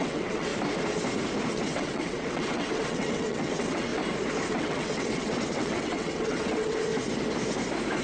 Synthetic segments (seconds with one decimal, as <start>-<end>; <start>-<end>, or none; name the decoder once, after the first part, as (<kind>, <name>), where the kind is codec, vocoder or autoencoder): 0.0-0.5 (vocoder, WaveNeXt); 1.5-3.9; 4.5-6.9